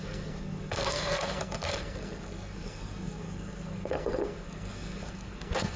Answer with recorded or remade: remade